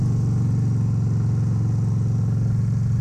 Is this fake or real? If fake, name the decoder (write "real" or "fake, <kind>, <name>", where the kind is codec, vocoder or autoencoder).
real